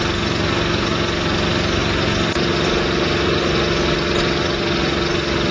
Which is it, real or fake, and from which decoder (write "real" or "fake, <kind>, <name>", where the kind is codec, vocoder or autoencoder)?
real